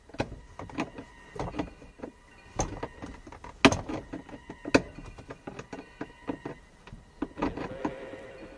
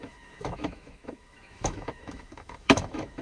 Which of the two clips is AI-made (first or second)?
second